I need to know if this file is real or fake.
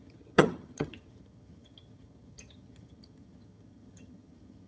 fake